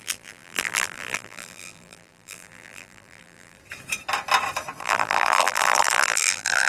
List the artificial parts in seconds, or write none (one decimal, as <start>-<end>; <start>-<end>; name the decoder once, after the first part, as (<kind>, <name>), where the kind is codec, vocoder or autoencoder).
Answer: 0.0-3.6 (vocoder, BigVGAN v2); 4.8-6.7